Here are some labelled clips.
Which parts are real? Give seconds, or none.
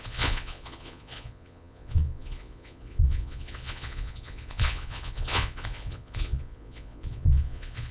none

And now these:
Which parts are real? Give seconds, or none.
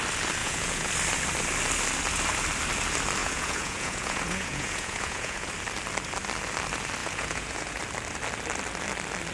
0.0-0.4; 0.9-3.2; 5.5-7.0; 7.8-9.3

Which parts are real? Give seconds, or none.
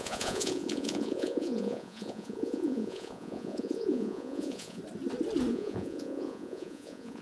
4.8-5.5